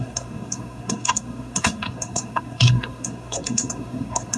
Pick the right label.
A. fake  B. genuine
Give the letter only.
A